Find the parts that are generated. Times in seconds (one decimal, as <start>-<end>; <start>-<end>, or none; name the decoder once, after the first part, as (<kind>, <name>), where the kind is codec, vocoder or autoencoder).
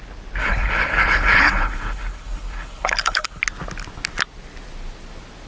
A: 0.4-3.4 (codec, HILCodec)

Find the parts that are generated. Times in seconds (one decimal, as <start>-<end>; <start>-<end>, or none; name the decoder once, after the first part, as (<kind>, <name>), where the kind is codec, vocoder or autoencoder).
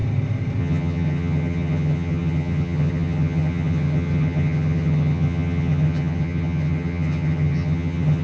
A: 0.6-8.2 (vocoder, HiFi-GAN)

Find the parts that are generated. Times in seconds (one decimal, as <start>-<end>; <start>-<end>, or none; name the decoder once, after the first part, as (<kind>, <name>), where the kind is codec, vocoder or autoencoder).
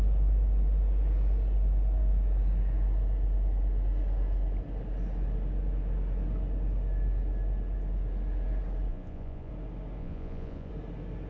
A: 8.9-9.5 (vocoder, Vocos); 10.0-10.7